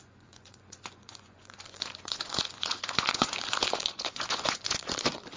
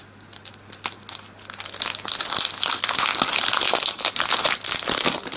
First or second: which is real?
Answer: second